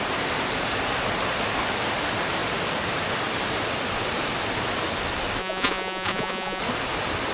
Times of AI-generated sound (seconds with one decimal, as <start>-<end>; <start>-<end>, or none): 5.4-6.6